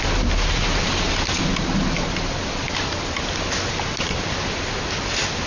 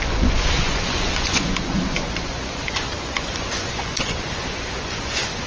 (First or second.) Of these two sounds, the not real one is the second